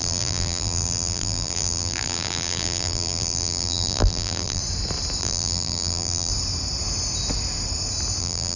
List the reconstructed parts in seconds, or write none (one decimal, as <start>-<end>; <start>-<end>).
0.0-4.6; 5.2-6.3; 8.2-8.6